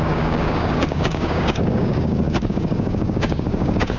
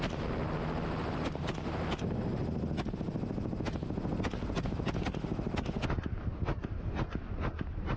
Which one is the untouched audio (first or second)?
second